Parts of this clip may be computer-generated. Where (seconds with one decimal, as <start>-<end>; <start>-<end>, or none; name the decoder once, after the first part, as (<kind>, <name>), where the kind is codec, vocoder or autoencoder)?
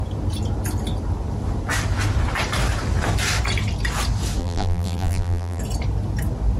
4.4-5.6 (vocoder, BigVGAN v2)